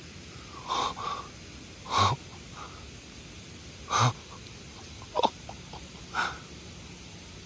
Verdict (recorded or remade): recorded